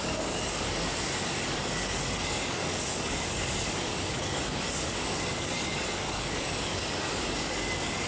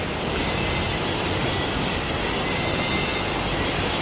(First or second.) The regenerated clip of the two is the first